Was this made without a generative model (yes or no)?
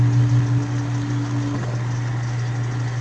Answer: yes